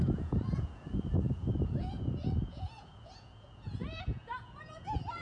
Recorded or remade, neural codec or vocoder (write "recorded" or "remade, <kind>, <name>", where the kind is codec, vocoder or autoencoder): remade, vocoder, Vocos